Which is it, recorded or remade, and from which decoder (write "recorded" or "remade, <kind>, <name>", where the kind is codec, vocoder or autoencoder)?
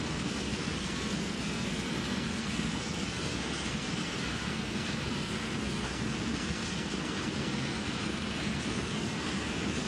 remade, codec, SNAC